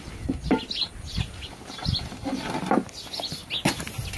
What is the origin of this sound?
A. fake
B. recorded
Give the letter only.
B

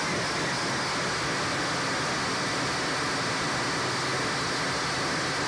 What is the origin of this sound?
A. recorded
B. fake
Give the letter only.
A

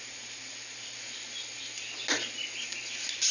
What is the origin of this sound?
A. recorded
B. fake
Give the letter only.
A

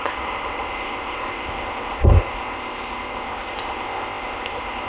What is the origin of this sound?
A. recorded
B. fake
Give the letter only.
B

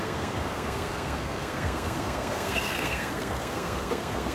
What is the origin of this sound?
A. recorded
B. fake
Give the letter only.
B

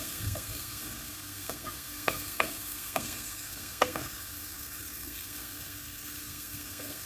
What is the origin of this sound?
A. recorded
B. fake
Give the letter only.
B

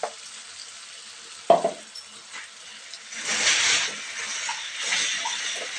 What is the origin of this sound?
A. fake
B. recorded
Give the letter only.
B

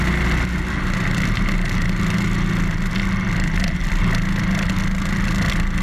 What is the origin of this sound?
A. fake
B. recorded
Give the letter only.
B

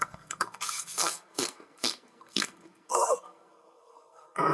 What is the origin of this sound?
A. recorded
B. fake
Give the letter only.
B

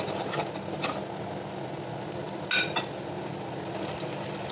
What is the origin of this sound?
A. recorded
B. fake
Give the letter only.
A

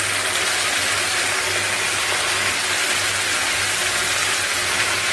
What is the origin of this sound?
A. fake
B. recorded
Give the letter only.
B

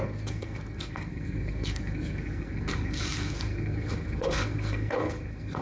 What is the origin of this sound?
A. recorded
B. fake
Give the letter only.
B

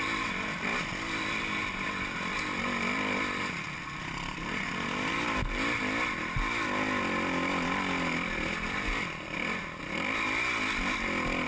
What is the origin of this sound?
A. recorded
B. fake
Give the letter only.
A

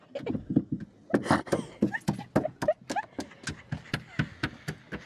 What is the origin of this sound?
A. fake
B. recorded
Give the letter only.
B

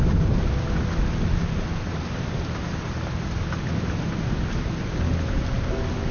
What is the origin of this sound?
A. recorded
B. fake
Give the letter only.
A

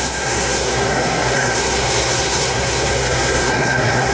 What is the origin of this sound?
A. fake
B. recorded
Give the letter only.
A